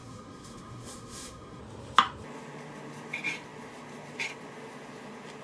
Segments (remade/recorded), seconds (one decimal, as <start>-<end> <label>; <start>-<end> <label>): 0.0-1.6 remade; 1.6-5.4 recorded